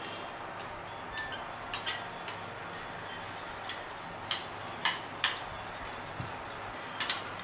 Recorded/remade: recorded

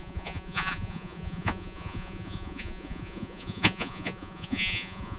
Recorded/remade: remade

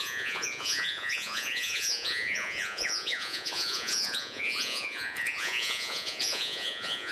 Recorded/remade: remade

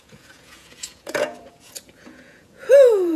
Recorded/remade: remade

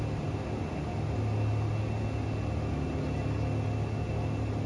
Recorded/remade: recorded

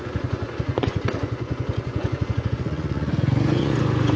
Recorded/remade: remade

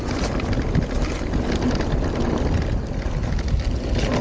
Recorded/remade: recorded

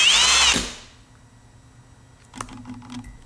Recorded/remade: recorded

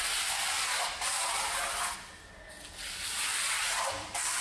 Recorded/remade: recorded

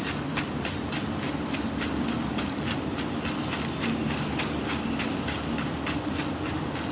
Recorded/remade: recorded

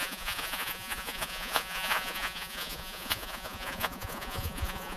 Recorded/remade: remade